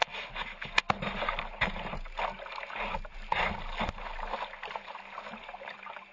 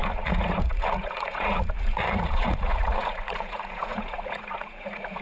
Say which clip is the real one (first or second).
first